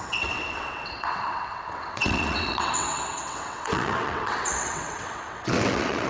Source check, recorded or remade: remade